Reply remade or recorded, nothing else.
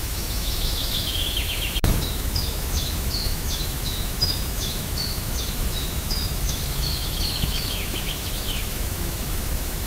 remade